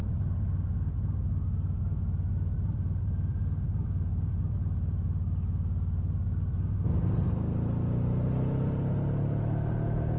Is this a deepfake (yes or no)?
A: no